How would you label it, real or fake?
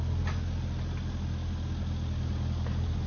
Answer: real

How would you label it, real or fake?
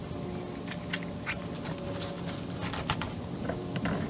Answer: real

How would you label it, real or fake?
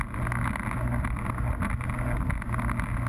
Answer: real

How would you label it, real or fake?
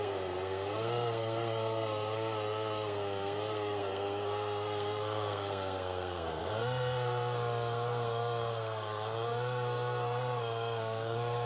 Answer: fake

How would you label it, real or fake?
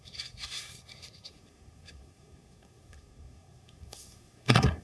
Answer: fake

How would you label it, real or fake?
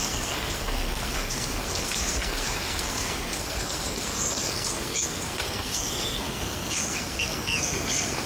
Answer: fake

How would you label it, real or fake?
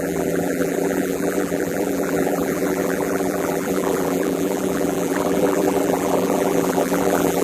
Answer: fake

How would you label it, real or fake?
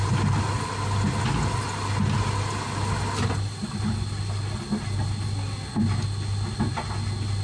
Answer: real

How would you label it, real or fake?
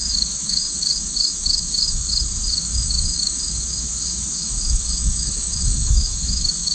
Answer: fake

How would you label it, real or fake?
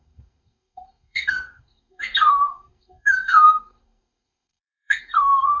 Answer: fake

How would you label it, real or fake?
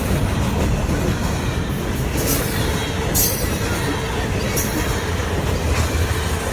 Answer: real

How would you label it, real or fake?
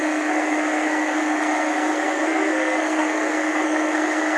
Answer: fake